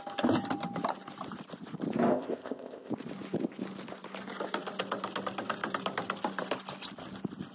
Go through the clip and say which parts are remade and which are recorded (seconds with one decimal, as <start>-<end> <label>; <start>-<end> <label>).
0.0-2.1 recorded; 2.1-2.9 remade; 2.9-7.5 recorded